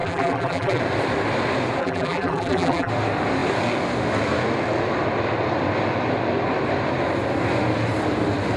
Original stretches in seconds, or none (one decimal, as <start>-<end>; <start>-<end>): 0.8-1.8; 2.9-8.6